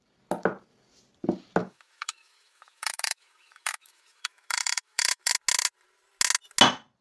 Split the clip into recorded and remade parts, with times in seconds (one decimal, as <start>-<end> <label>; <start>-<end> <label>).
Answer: 0.0-1.6 recorded; 1.6-5.3 remade; 5.3-7.0 recorded